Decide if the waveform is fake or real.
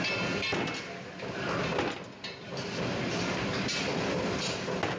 real